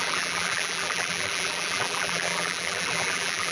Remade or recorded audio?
remade